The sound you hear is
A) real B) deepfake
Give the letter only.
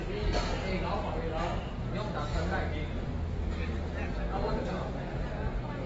A